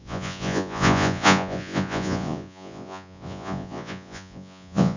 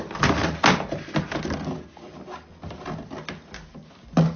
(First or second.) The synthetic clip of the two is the first